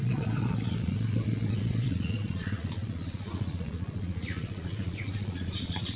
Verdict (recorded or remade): remade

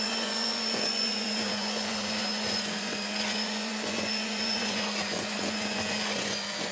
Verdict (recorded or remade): remade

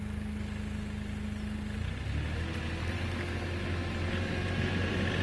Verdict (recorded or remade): recorded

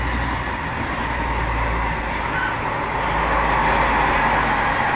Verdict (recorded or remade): recorded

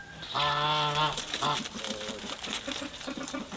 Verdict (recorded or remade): recorded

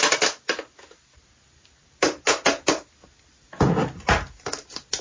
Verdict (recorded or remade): recorded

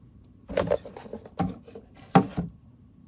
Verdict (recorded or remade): recorded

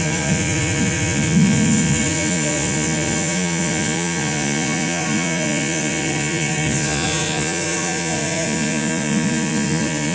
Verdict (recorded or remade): remade